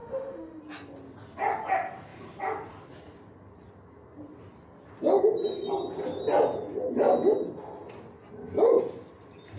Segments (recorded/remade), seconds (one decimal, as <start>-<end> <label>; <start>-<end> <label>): 0.0-0.6 remade; 0.6-9.6 recorded